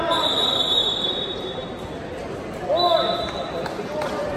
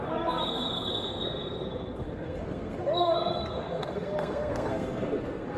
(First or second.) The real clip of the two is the first